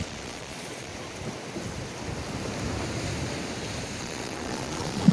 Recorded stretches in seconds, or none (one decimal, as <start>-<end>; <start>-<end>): 0.9-4.0